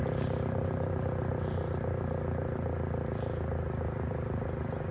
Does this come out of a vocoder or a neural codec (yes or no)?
no